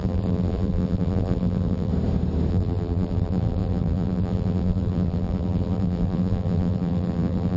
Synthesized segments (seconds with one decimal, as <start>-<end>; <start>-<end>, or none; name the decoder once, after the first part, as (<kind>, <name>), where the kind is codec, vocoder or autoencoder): 0.0-1.9 (vocoder, BigVGAN v2); 2.5-7.6